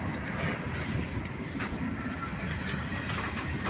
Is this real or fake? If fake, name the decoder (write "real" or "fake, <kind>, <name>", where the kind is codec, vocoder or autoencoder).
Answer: fake, vocoder, BigVGAN v2